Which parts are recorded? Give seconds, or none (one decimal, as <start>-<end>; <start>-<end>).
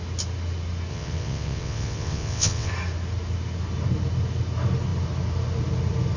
0.0-0.9; 2.7-6.2